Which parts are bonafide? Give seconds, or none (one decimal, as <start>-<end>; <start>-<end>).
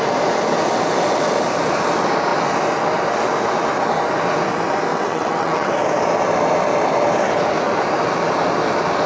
0.0-4.9; 5.7-9.1